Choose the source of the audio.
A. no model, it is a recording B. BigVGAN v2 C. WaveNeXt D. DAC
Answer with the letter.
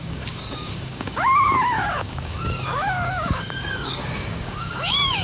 D